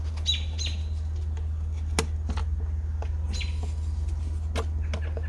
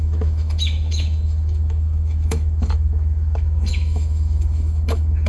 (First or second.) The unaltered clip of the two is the first